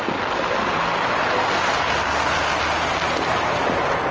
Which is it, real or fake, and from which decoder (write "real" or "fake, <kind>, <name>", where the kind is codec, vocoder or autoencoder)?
real